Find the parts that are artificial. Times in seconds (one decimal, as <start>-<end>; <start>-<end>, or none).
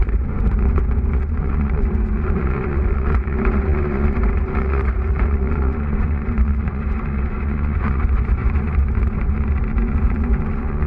0.0-10.9